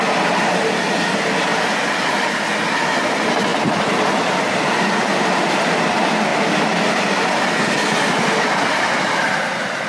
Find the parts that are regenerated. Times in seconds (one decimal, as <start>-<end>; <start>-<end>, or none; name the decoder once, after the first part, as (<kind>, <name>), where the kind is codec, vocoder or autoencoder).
0.5-1.0 (vocoder, BigVGAN v2); 3.5-5.6